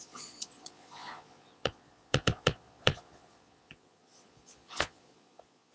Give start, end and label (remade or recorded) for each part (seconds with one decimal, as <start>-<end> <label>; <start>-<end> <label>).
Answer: 0.0-5.7 remade